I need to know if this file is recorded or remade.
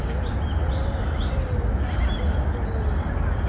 recorded